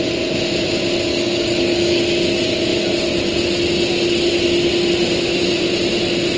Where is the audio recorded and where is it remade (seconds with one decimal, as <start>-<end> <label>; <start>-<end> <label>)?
0.0-1.1 recorded; 1.1-2.0 remade; 2.0-6.4 recorded